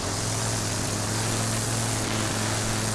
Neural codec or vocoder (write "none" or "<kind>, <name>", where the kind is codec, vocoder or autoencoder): none